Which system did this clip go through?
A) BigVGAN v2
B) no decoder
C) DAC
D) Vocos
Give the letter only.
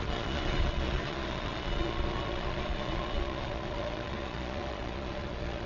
D